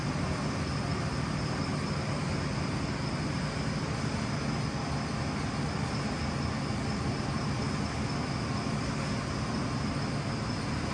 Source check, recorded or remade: recorded